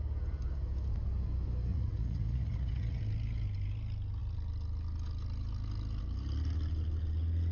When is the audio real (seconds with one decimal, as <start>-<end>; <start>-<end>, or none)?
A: 0.0-1.7; 3.0-7.5